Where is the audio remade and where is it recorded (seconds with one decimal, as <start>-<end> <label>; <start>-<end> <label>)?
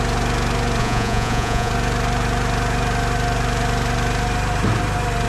0.0-0.8 recorded; 0.8-1.7 remade; 1.7-5.3 recorded